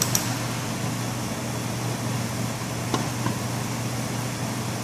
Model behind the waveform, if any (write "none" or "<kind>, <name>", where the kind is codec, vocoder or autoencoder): none